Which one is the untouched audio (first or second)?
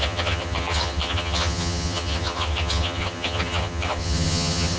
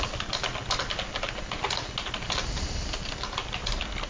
second